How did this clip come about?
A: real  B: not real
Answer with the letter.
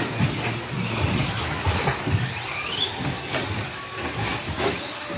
A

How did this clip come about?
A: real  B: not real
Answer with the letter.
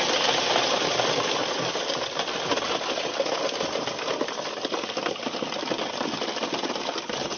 A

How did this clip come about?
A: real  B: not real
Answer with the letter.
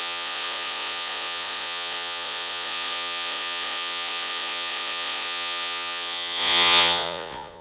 B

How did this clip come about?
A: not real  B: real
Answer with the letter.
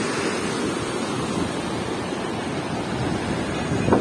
B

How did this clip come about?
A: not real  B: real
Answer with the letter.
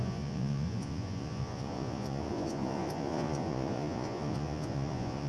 A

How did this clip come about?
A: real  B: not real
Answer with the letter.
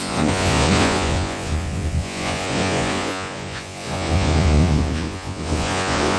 B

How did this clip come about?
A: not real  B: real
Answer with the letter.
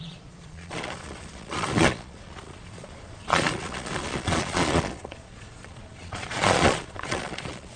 A